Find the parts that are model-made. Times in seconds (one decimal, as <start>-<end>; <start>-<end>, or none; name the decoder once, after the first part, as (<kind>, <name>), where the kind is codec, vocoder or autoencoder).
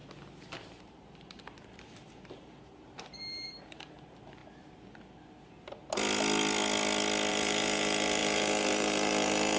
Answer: 0.8-4.4 (vocoder, BigVGAN v2); 7.3-9.6